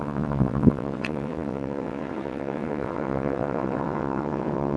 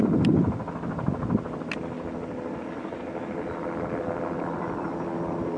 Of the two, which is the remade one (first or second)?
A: first